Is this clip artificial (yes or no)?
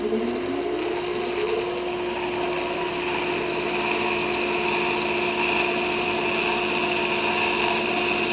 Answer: no